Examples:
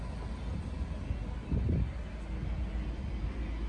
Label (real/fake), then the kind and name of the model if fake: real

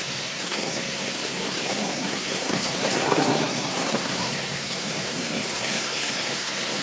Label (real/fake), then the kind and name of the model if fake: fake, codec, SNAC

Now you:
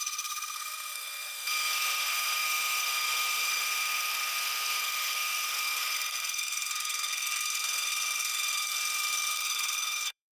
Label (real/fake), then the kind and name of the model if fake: fake, codec, SNAC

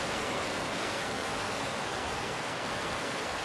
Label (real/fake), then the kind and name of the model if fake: fake, codec, SNAC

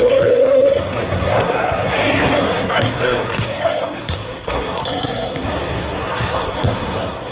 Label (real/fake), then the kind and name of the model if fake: fake, codec, SNAC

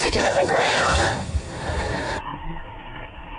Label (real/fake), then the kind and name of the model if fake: fake, codec, SNAC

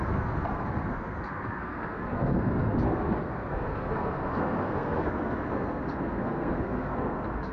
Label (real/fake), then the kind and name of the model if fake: fake, codec, SNAC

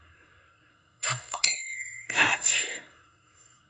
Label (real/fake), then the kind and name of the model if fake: fake, codec, SNAC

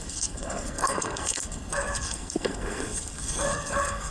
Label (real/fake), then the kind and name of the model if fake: fake, codec, SNAC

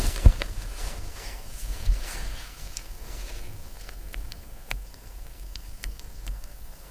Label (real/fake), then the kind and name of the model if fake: fake, codec, SNAC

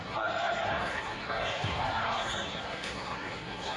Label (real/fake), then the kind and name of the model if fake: fake, codec, SNAC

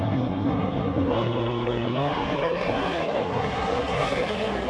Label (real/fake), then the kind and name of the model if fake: fake, codec, SNAC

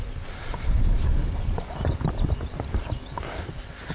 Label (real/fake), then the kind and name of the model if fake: real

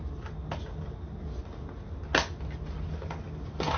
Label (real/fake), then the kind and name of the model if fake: real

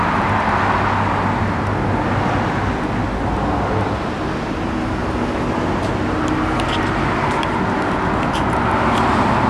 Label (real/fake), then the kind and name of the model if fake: real